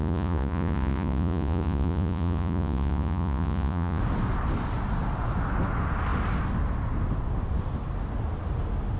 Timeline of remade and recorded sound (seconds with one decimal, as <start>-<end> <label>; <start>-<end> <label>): 0.0-4.0 remade; 4.0-9.0 recorded